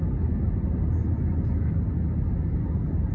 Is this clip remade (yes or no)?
no